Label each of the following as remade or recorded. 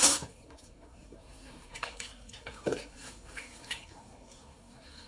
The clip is remade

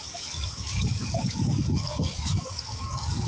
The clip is remade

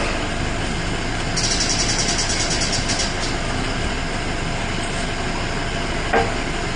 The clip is recorded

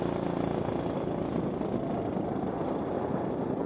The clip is recorded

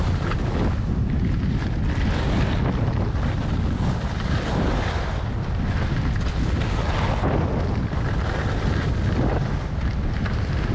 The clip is recorded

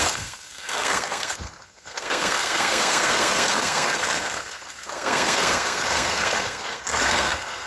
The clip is remade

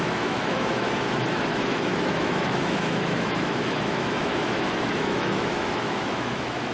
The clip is remade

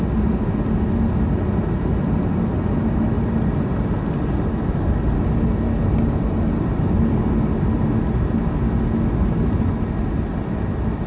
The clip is recorded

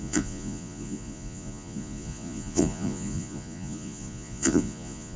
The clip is remade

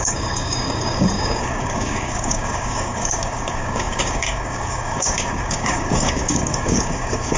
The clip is remade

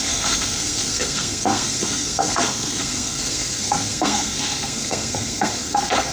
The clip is remade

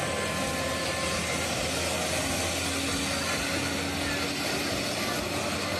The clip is recorded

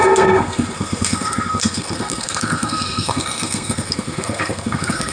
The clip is remade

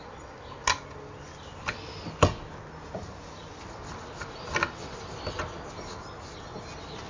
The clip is recorded